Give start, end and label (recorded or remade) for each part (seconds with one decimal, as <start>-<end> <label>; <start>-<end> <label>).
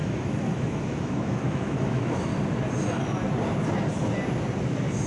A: 0.0-2.3 remade; 2.3-5.1 recorded